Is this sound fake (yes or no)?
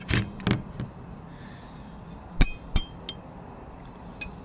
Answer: no